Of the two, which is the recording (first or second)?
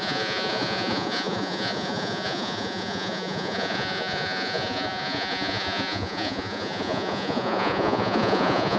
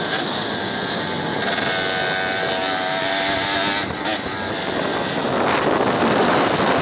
second